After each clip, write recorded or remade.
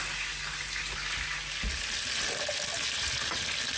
recorded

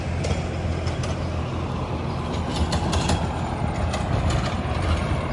recorded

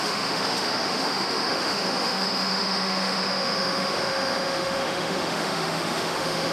remade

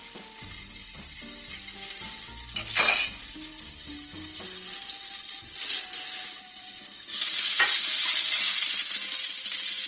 recorded